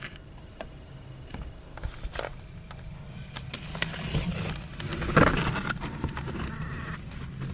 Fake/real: real